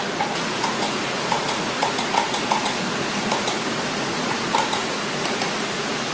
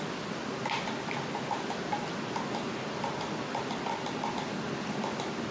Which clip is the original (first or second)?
second